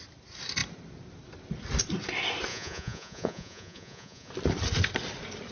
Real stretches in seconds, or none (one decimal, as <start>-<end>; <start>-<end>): 0.0-2.5; 4.3-5.5